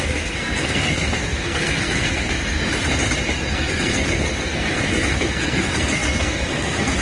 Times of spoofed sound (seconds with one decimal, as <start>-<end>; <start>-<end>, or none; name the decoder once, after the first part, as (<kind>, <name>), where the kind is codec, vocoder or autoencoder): 0.0-2.6 (codec, SNAC); 3.5-7.0